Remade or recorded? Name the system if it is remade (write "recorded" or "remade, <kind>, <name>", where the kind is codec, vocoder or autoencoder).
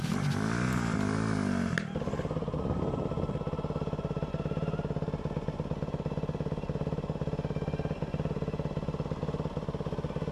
recorded